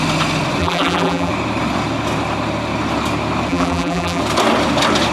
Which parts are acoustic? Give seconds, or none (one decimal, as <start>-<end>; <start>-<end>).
0.0-0.6; 1.3-3.5; 4.2-5.1

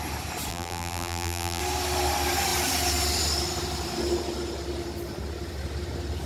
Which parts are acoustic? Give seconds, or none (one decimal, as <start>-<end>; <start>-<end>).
0.0-0.5; 1.6-6.3